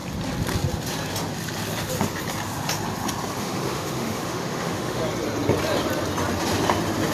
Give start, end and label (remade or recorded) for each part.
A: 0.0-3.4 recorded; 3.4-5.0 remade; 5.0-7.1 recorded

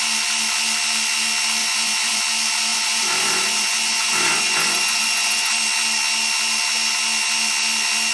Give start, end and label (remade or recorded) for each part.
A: 0.0-1.6 recorded; 1.6-2.2 remade; 2.2-2.7 recorded; 2.7-5.5 remade; 5.5-8.1 recorded

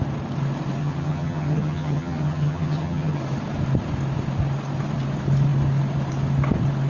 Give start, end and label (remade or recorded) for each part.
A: 0.0-0.8 recorded; 0.8-3.2 remade; 3.2-6.9 recorded

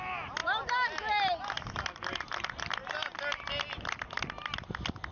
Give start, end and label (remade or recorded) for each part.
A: 0.0-5.1 recorded